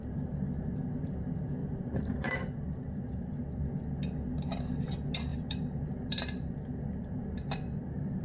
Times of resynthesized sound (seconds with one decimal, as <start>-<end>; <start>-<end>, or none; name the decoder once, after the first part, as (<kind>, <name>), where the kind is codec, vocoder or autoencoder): 1.6-3.2 (vocoder, BigVGAN v2)